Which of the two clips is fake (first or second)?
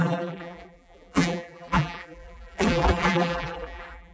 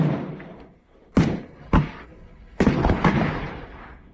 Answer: first